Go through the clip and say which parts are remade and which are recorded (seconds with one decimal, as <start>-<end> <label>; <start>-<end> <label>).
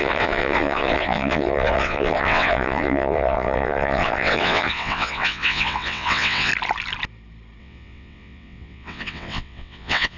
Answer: 0.0-6.5 remade; 6.5-7.6 recorded; 7.6-10.2 remade